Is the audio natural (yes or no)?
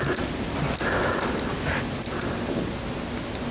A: yes